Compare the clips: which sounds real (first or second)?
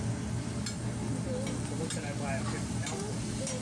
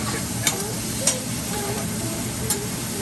first